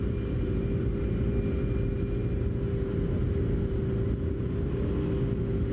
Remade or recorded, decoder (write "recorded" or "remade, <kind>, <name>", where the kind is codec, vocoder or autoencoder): recorded